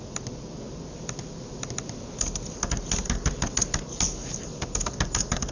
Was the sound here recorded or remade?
recorded